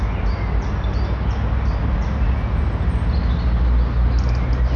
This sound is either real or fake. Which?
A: real